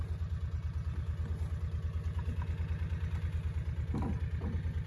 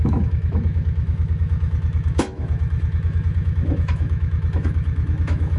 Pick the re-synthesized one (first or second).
second